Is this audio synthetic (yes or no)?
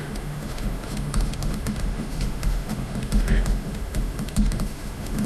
yes